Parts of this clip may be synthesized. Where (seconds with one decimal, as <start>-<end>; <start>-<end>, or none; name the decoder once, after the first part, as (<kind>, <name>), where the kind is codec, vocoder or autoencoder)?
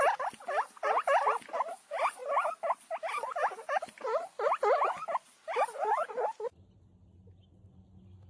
none